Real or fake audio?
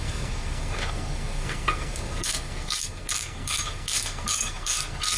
fake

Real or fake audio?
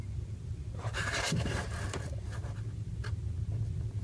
real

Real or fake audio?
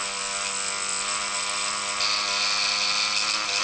real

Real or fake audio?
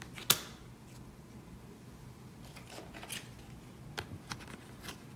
real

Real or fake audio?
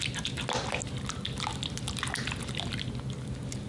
real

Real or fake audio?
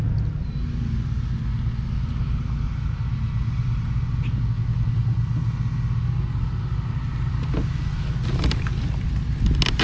real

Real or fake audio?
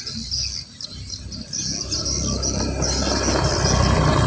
real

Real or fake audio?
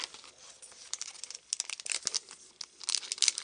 real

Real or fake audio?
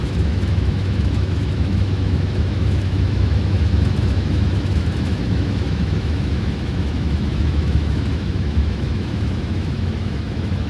fake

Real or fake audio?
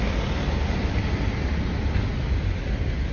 real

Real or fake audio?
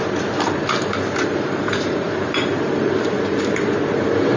fake